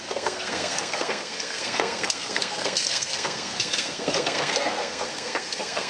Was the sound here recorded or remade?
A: remade